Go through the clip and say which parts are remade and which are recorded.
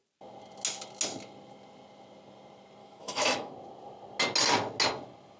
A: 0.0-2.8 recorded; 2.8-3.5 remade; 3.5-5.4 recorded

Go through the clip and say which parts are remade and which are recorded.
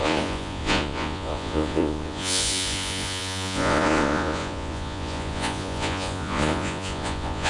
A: 0.0-7.5 remade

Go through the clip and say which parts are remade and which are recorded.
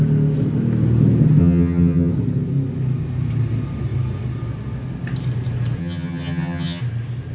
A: 0.0-1.4 recorded; 1.4-2.1 remade; 2.1-5.8 recorded; 5.8-6.8 remade; 6.8-7.3 recorded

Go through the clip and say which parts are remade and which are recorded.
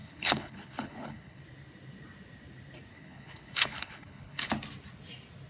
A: 0.0-1.4 remade; 1.4-2.9 recorded; 2.9-4.5 remade; 4.5-5.5 recorded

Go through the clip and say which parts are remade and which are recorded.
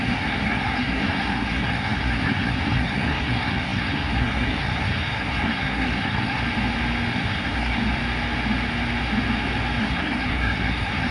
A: 0.0-6.4 remade; 6.4-7.1 recorded; 7.1-7.8 remade; 7.8-9.8 recorded; 9.8-11.1 remade